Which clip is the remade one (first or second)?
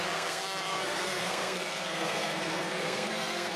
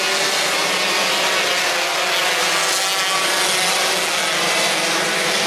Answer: first